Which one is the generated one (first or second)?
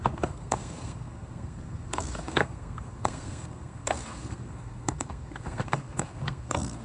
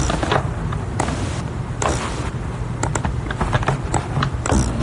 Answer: first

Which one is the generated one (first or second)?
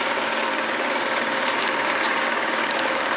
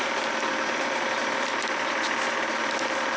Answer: first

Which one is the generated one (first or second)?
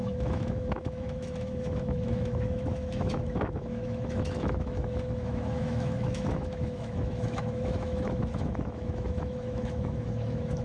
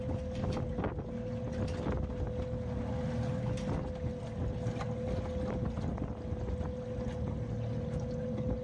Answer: first